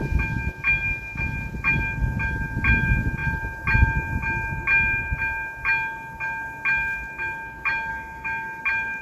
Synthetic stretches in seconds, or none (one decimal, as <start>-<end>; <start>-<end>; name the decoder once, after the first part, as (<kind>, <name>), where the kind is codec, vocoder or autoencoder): 7.9-8.6 (autoencoder, DAC-VAE)